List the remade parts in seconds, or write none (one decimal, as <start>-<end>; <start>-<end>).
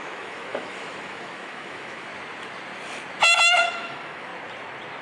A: 0.0-2.1; 3.4-4.3